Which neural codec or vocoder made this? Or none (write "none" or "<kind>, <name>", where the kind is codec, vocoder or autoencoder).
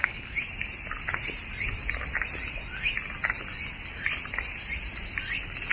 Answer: none